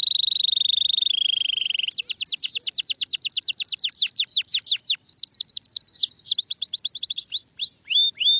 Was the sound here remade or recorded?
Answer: recorded